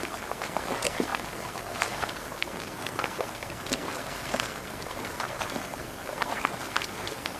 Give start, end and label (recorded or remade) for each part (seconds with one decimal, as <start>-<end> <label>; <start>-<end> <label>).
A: 0.0-7.4 remade